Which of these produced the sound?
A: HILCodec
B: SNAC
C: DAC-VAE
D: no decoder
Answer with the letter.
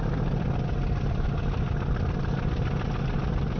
D